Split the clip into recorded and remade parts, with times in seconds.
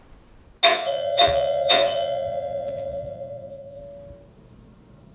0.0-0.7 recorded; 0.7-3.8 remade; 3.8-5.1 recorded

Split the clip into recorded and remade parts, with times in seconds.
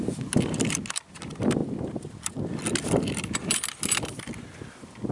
0.0-5.1 recorded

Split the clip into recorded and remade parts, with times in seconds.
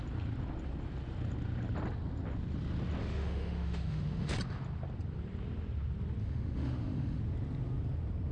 0.0-3.0 recorded; 3.0-4.3 remade; 4.3-6.2 recorded; 6.2-7.2 remade; 7.2-8.3 recorded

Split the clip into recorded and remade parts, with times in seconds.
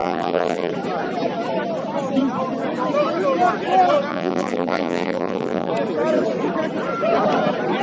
0.0-0.7 remade; 0.7-4.1 recorded; 4.1-5.7 remade; 5.7-7.8 recorded